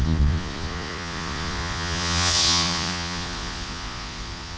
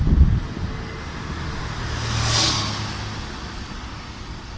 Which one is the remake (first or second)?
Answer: first